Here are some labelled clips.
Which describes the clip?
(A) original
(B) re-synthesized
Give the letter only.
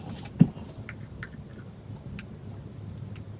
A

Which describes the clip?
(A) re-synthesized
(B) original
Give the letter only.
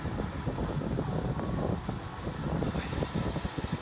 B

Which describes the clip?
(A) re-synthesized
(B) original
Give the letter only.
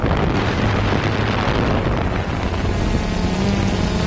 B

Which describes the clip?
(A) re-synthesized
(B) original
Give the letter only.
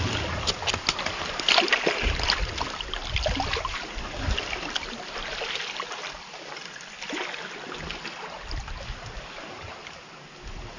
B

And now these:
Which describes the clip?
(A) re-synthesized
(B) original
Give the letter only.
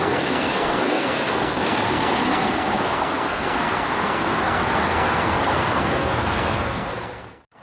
A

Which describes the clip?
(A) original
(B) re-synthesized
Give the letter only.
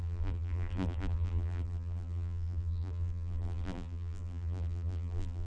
B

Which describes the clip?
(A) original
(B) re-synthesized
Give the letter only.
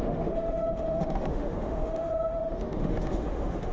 B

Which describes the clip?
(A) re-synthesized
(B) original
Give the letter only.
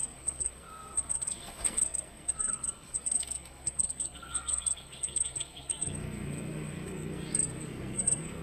A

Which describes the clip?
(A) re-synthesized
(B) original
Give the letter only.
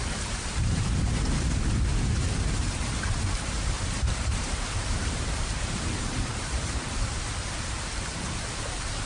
A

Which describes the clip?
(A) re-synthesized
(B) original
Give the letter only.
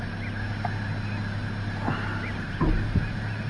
B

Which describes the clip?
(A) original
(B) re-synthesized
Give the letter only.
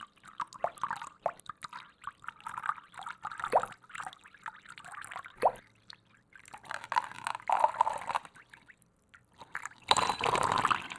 A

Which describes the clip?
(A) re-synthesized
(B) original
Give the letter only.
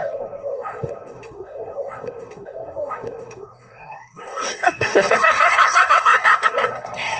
A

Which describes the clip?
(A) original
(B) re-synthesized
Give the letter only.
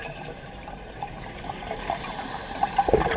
B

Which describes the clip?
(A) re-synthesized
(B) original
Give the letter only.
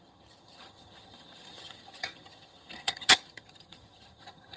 A